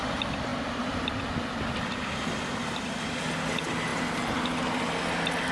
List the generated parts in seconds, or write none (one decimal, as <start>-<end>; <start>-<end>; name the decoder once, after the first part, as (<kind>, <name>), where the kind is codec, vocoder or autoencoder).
none